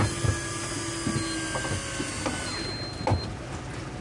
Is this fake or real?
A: real